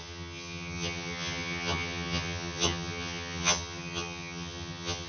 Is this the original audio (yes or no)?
no